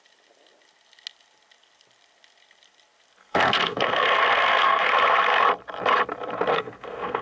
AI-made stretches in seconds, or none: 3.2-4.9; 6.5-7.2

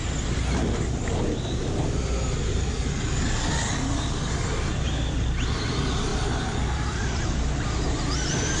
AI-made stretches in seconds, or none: 6.1-7.6

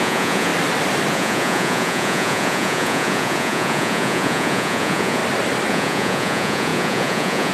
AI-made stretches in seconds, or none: 0.0-0.5; 1.1-5.2; 5.7-7.5

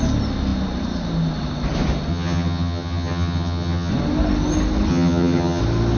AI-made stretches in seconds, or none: 2.1-3.9; 4.9-5.6

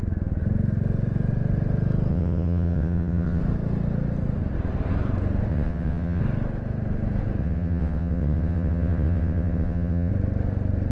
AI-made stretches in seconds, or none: 2.1-3.4; 5.5-6.2; 7.4-10.1

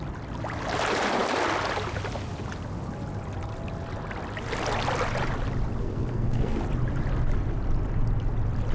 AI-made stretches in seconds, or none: 5.8-6.6

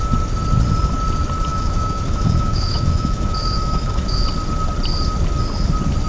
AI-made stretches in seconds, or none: 1.5-4.2

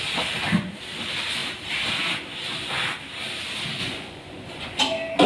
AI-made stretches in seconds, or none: 3.8-4.8